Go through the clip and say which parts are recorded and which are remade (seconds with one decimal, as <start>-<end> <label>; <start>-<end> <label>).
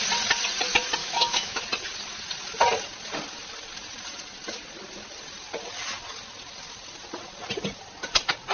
0.0-1.0 recorded; 1.0-1.6 remade; 1.6-8.5 recorded